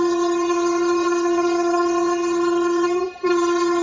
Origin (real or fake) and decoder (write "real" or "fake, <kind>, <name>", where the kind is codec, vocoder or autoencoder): fake, vocoder, HiFi-GAN